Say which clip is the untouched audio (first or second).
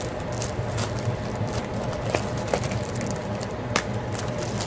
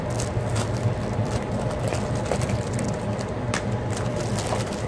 second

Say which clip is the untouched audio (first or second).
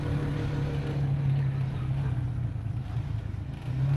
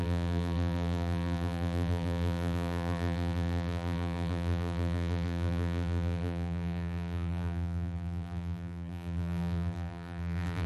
first